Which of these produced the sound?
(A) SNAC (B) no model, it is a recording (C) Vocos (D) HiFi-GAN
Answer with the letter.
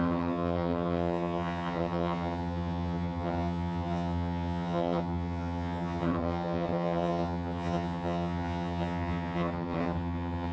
D